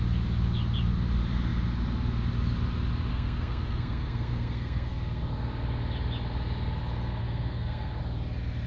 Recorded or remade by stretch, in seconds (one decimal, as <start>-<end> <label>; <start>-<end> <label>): 0.0-3.1 recorded; 3.1-5.2 remade; 5.2-7.2 recorded; 7.2-8.0 remade; 8.0-8.7 recorded